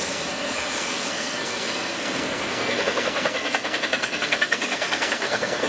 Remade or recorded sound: remade